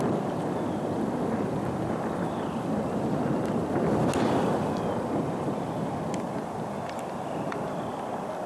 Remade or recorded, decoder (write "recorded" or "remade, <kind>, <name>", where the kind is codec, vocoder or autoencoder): recorded